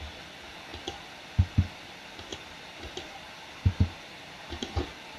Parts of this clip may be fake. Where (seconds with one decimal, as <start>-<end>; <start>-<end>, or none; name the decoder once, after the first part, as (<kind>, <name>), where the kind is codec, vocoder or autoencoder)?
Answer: 2.3-4.8 (vocoder, BigVGAN v2)